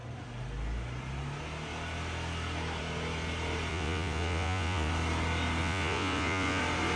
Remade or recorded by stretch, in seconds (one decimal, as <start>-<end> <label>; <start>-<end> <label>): 0.0-3.7 recorded; 3.7-4.9 remade; 4.9-5.6 recorded; 5.6-6.6 remade; 6.6-7.0 recorded